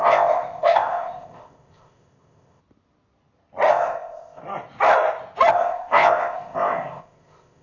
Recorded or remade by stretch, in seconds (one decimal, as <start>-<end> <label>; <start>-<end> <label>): 0.0-2.6 remade; 2.6-3.7 recorded; 3.7-4.4 remade; 4.4-5.5 recorded; 5.5-7.6 remade